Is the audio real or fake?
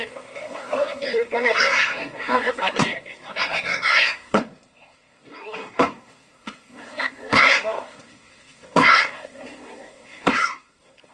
fake